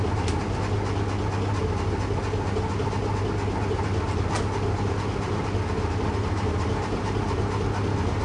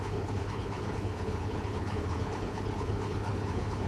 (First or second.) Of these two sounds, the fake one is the second